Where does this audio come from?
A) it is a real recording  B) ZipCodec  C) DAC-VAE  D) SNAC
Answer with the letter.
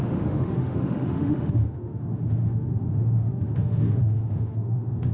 C